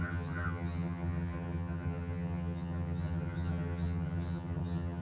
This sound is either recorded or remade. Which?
remade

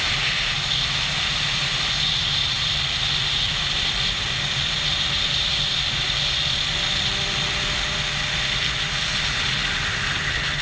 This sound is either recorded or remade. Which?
recorded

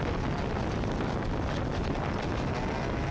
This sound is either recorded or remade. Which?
recorded